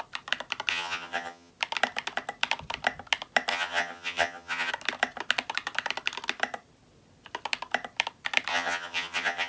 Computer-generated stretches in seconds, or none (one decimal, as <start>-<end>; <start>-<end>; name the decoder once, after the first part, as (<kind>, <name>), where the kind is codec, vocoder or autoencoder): 0.7-1.5 (vocoder, HiFi-GAN); 3.5-4.7; 8.5-9.5